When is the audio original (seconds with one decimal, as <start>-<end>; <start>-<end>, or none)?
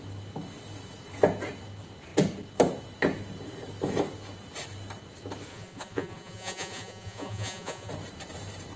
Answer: 0.0-5.5; 7.9-8.8